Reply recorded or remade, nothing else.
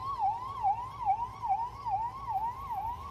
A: recorded